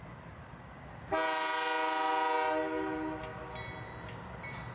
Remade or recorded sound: recorded